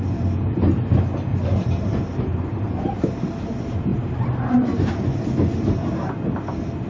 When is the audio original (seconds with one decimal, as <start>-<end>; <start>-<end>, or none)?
0.0-1.3; 2.0-2.5; 3.3-3.9; 4.9-6.9